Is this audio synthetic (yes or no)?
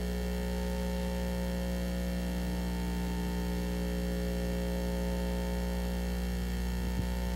no